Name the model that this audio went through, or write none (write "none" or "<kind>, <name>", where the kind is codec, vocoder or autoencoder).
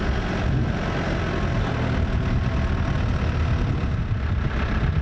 none